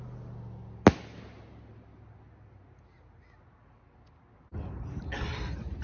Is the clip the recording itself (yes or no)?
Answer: yes